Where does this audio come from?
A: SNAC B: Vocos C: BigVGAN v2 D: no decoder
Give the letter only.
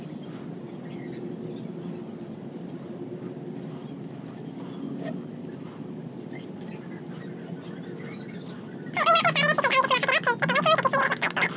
D